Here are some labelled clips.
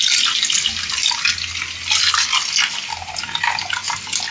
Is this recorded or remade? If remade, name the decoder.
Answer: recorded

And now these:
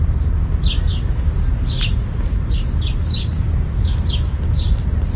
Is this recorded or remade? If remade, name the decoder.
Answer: recorded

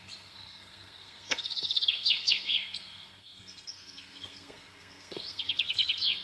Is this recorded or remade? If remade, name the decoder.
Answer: remade, codec, SNAC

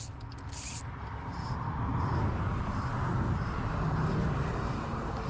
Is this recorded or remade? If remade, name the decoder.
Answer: recorded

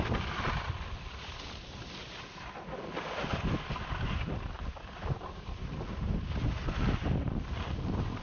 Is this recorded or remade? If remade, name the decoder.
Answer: recorded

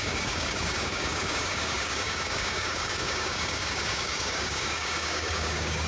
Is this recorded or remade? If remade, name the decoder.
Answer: remade, codec, DAC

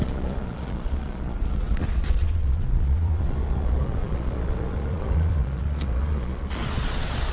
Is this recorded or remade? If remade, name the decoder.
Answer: remade, vocoder, Vocos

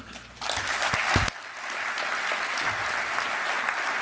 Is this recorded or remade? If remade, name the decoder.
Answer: recorded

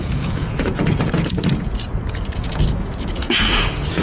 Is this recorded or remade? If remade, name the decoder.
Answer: remade, vocoder, Vocos